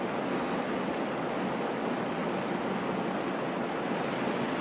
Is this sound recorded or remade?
recorded